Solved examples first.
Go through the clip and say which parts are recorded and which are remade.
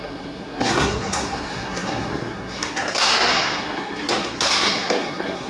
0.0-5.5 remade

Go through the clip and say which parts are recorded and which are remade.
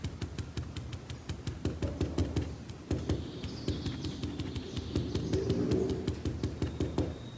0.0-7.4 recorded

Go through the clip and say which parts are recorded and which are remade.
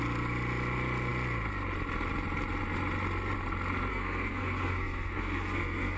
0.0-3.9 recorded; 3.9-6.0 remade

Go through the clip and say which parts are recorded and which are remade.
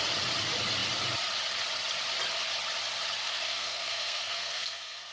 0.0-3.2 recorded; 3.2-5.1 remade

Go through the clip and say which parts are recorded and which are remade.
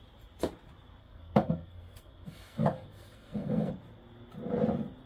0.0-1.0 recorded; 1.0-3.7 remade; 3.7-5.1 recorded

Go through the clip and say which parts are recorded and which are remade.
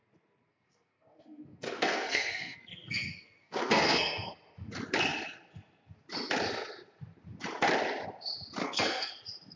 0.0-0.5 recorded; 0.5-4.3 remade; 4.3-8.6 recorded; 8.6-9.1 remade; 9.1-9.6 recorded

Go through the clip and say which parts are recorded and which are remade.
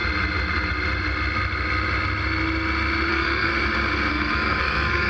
0.0-3.1 recorded; 3.1-3.5 remade; 3.5-4.1 recorded; 4.1-5.1 remade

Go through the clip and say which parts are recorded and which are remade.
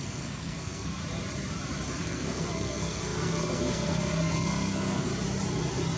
0.0-1.0 remade; 1.0-2.0 recorded; 2.0-5.1 remade; 5.1-6.0 recorded